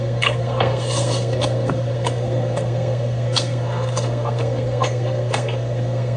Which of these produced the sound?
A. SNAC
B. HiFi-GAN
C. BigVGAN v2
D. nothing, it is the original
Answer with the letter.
A